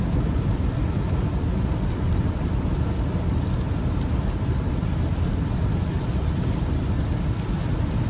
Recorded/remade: remade